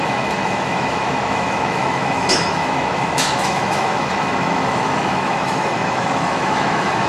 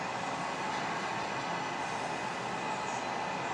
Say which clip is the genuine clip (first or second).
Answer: second